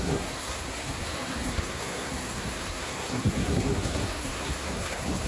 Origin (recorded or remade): remade